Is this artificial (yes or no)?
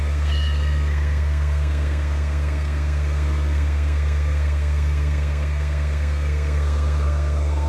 yes